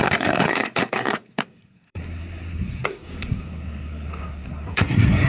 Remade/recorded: remade